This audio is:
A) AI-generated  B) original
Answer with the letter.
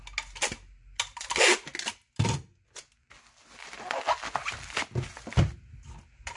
B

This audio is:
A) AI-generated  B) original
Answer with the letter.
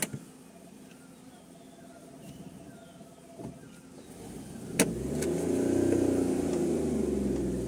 B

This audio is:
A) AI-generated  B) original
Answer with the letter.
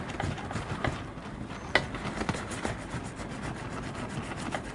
B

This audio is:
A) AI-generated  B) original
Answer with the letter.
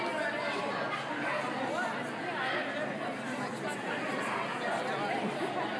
B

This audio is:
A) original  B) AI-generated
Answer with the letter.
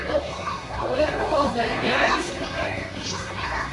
B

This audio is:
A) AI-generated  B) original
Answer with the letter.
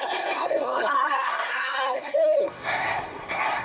A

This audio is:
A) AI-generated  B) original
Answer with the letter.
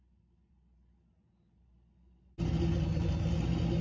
B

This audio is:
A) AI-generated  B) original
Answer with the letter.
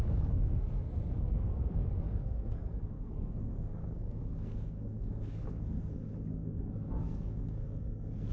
A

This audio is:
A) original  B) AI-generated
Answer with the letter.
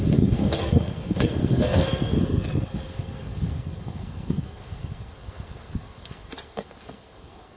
B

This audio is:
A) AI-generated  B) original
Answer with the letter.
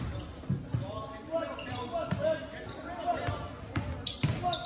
B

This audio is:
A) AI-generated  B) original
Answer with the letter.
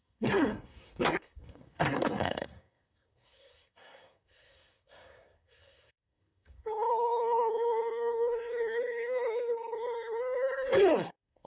A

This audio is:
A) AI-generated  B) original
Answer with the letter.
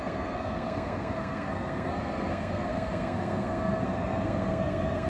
A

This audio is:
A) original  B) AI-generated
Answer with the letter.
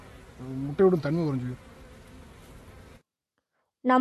A